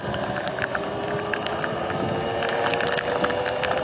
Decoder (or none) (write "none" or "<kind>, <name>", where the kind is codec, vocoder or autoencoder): none